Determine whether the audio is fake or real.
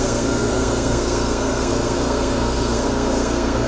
fake